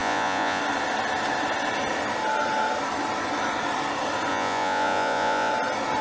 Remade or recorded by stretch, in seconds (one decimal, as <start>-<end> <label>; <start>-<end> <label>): 0.0-0.6 remade; 0.6-4.3 recorded; 4.3-5.5 remade; 5.5-6.0 recorded